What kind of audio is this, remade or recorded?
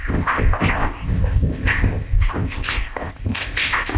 remade